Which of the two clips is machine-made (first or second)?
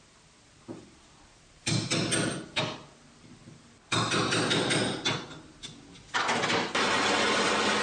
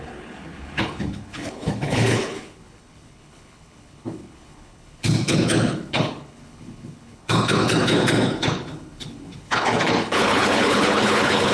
second